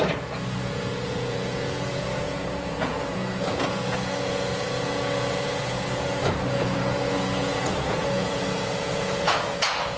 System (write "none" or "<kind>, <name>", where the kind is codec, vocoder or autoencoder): vocoder, Vocos